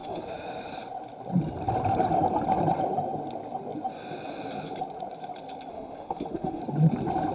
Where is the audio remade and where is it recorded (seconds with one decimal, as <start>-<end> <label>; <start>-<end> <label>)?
0.0-0.7 remade; 0.7-5.7 recorded; 5.7-6.6 remade; 6.6-7.3 recorded